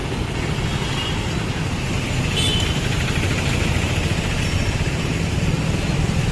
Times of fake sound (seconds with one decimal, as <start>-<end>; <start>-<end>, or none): none

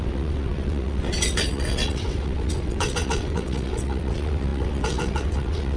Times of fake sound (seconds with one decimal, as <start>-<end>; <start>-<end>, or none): 0.0-5.8

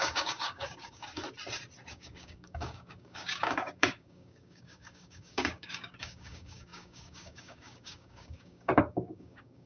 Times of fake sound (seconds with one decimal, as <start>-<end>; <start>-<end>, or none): 0.0-1.2; 1.9-9.7

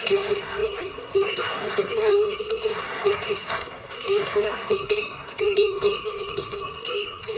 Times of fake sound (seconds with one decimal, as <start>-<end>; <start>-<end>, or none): 0.0-7.4

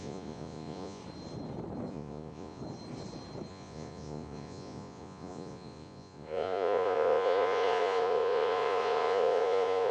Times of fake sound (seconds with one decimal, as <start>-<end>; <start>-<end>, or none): 0.0-1.0; 1.9-2.6; 3.5-9.9

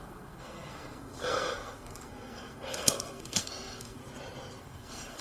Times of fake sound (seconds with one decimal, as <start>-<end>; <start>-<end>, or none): 0.0-4.0; 4.6-5.2